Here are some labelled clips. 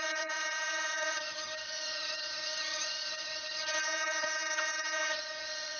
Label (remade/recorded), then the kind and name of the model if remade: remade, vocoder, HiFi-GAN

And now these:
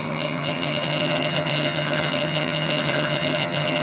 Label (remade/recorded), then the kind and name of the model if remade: remade, vocoder, HiFi-GAN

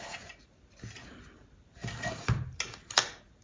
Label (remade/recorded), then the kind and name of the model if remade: recorded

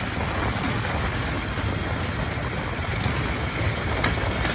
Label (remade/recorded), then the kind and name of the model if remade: recorded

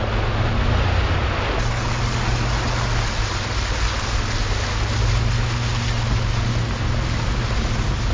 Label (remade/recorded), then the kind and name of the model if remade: recorded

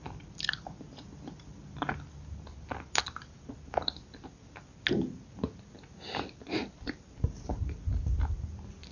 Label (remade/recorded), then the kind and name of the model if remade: recorded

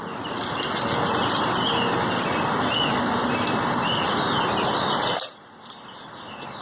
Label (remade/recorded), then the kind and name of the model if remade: recorded